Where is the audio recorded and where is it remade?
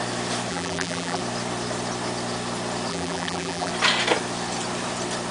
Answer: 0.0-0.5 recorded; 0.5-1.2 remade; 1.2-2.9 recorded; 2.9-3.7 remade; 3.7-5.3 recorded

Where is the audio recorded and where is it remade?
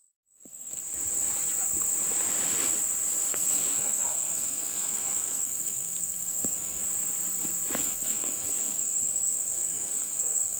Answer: 0.0-0.8 remade; 0.8-3.3 recorded; 3.3-6.8 remade; 6.8-7.8 recorded; 7.8-10.6 remade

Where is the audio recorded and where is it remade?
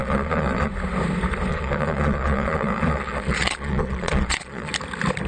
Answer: 0.0-0.7 remade; 0.7-1.5 recorded; 1.5-4.7 remade; 4.7-5.3 recorded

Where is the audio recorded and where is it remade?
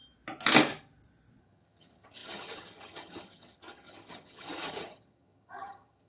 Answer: 0.0-1.4 recorded; 1.4-6.1 remade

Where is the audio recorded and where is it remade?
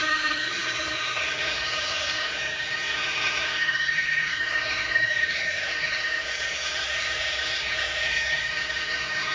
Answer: 0.0-9.3 remade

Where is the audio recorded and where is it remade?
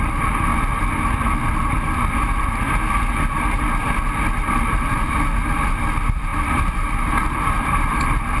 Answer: 0.0-0.5 remade; 0.5-4.5 recorded; 4.5-8.4 remade